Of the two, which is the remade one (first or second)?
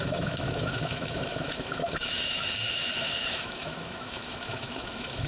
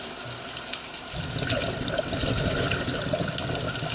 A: first